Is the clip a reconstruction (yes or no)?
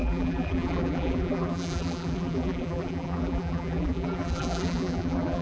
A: yes